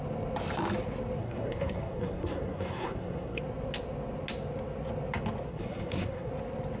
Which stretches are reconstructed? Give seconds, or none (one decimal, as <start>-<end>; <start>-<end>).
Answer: 1.2-3.4; 5.5-6.3